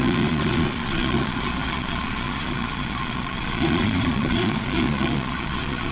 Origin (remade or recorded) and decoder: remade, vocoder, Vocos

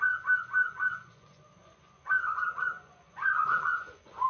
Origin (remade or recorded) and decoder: remade, vocoder, Vocos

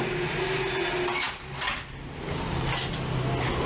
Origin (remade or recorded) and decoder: recorded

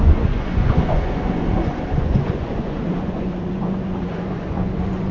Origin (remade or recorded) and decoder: remade, vocoder, Vocos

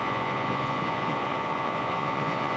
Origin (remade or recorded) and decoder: remade, vocoder, Vocos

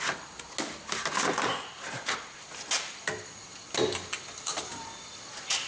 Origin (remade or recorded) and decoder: recorded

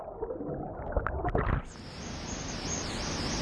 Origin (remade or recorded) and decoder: recorded